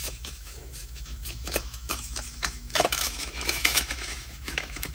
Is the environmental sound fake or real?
fake